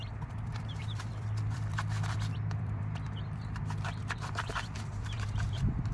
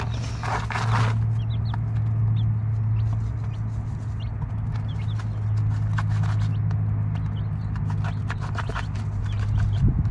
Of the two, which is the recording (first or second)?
second